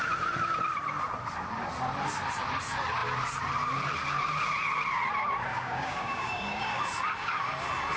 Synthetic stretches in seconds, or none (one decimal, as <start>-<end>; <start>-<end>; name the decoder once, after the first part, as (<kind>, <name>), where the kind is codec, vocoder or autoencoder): 5.5-6.8 (codec, DAC)